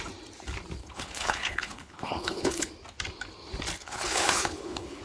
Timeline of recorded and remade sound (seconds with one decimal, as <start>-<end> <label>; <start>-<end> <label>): 0.0-0.8 recorded; 0.8-2.7 remade; 2.7-3.8 recorded; 3.8-5.0 remade